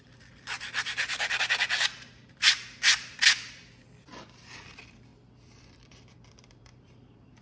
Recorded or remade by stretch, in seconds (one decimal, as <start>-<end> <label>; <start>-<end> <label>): 0.0-5.1 remade; 5.1-5.6 recorded; 5.6-7.4 remade